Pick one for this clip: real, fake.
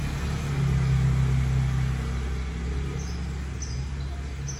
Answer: real